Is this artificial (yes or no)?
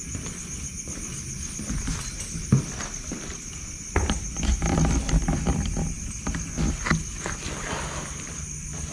no